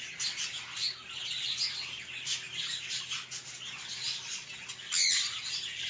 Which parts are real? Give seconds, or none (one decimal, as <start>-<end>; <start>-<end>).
0.0-5.9